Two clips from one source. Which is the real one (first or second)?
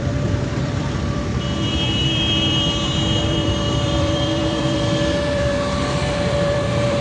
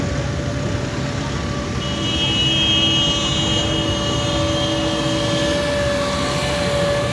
second